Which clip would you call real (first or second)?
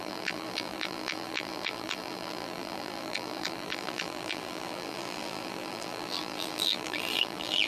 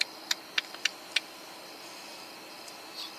second